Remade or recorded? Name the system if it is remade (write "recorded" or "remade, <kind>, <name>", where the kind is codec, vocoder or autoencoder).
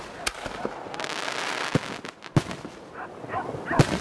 recorded